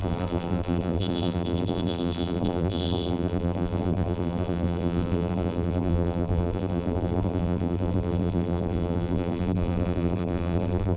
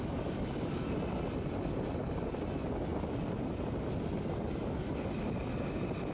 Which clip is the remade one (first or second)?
first